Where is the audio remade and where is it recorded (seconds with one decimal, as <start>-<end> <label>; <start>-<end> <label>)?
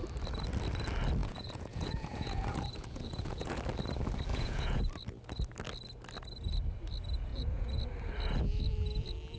0.0-1.2 recorded; 1.2-3.6 remade; 3.6-4.3 recorded; 4.3-4.8 remade; 4.8-7.3 recorded; 7.3-7.8 remade; 7.8-9.4 recorded